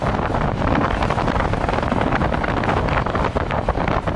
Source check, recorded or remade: recorded